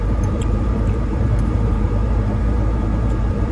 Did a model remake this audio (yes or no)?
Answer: yes